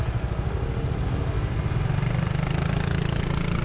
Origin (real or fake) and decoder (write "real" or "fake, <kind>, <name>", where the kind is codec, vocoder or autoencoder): real